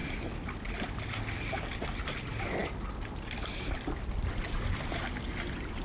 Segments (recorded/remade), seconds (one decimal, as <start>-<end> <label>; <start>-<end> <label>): 0.0-5.8 recorded